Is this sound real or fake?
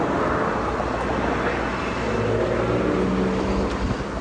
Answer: real